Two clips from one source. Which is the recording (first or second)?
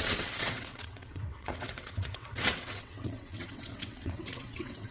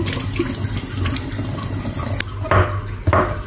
second